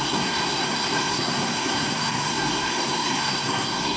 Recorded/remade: remade